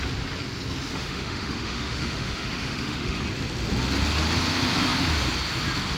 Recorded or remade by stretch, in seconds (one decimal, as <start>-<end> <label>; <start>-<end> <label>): 0.0-0.9 recorded; 0.9-3.2 remade; 3.2-6.0 recorded